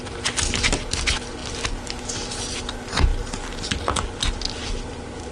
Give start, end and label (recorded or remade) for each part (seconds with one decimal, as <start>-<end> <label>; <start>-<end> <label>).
0.0-5.3 recorded